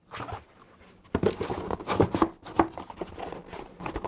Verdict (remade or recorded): recorded